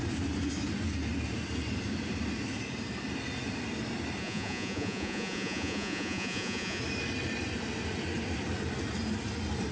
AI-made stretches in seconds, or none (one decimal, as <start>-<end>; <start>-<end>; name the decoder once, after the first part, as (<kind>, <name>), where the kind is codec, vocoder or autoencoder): 4.2-6.8 (vocoder, Vocos)